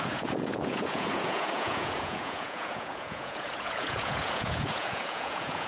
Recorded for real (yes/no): no